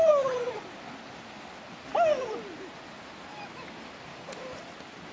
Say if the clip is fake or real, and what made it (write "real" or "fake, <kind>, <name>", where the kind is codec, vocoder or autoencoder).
real